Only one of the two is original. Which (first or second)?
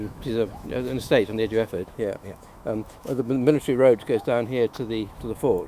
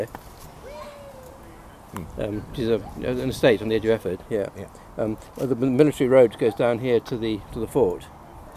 second